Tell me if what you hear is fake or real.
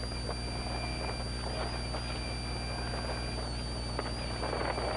real